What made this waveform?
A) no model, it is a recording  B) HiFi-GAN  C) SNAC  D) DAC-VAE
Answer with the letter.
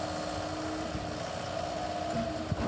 A